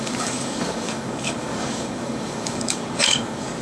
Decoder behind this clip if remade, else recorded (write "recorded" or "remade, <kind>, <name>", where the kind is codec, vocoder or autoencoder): remade, codec, DAC